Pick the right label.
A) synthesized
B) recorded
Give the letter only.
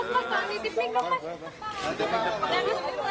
B